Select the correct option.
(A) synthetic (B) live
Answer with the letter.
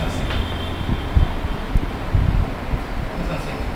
B